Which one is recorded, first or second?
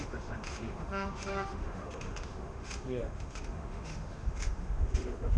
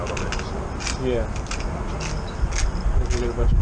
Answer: second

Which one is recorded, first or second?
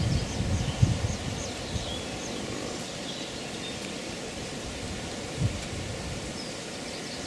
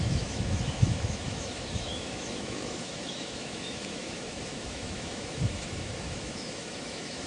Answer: first